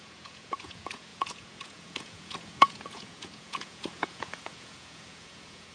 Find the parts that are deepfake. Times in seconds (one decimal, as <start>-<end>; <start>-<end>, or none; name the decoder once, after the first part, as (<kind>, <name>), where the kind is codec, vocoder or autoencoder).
0.0-5.7 (vocoder, Vocos)